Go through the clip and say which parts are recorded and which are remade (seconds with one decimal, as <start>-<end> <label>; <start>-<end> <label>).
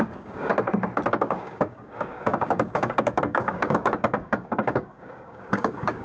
0.0-0.5 remade; 0.5-1.1 recorded; 1.1-6.0 remade